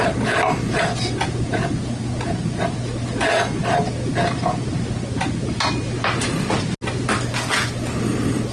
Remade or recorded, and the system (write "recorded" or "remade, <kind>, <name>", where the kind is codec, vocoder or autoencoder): recorded